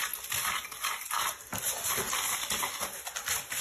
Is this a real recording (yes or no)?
yes